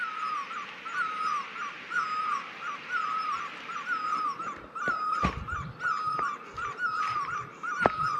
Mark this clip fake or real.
real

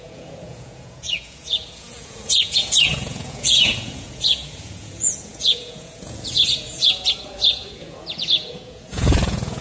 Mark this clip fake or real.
fake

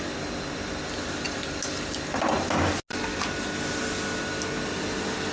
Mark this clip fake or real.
real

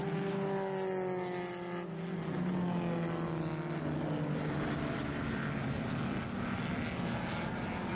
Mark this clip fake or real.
real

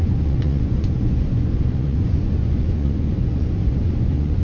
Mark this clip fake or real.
fake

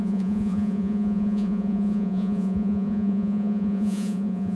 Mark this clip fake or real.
fake